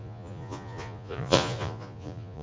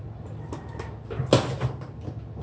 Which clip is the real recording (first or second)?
second